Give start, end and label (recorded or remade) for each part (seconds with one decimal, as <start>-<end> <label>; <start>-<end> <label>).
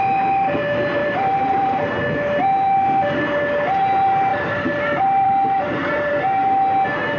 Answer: 0.0-1.0 recorded; 1.0-1.9 remade; 1.9-4.3 recorded; 4.3-6.1 remade; 6.1-7.2 recorded